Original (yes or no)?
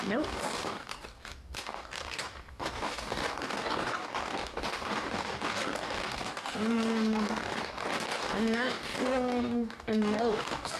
no